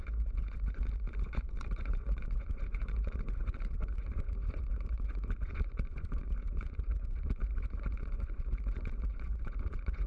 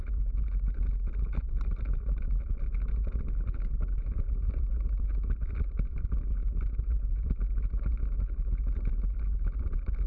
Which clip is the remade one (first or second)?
first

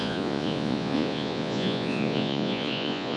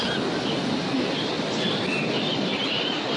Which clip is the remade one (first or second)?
first